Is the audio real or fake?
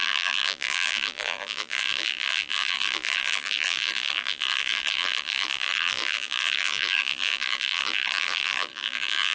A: fake